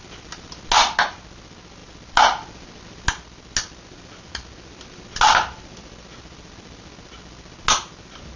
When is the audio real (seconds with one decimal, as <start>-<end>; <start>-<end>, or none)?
0.0-8.4